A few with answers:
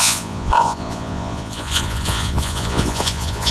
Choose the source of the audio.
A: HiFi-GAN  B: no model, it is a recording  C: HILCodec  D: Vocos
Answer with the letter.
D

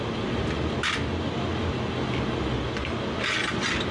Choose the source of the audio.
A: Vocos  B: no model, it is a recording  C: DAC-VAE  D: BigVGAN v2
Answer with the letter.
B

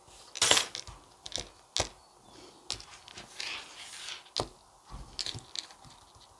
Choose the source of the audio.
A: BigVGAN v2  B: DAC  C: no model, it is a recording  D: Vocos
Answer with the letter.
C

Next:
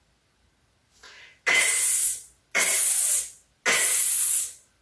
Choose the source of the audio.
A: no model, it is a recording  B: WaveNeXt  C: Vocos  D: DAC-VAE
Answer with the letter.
A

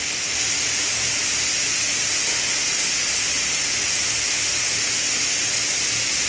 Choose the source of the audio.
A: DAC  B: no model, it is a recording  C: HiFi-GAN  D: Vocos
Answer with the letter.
B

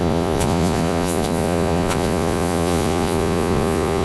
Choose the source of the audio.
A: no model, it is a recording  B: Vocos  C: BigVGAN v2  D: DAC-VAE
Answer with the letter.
B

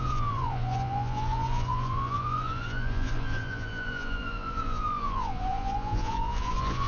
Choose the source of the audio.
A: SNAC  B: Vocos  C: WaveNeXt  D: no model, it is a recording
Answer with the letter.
B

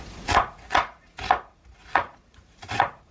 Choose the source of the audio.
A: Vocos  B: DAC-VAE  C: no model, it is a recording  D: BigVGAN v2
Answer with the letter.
A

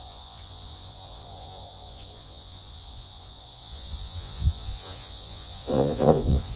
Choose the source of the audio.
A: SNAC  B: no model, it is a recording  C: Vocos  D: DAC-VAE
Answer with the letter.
C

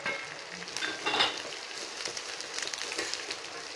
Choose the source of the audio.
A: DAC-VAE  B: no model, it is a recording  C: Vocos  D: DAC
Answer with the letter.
B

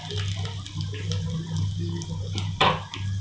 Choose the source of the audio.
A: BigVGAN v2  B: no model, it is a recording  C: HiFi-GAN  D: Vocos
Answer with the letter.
B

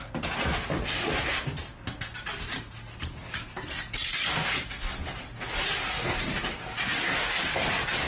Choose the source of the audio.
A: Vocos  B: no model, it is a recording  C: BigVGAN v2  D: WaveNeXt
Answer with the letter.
B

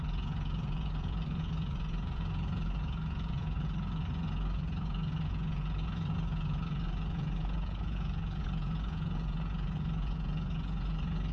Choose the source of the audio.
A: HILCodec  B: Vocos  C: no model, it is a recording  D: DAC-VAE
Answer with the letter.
B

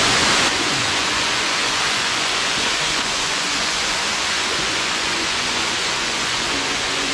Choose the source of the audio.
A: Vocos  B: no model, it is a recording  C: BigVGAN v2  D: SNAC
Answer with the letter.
A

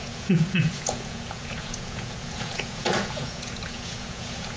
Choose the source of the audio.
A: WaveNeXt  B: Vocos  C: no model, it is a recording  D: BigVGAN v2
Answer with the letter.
B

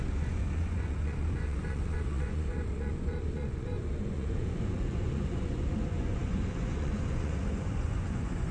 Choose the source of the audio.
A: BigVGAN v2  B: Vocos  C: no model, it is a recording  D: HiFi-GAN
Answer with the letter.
B